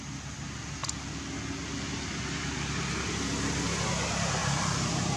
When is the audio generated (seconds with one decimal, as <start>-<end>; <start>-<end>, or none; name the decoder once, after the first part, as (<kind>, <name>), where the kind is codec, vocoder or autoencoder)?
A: 4.4-5.2 (vocoder, BigVGAN v2)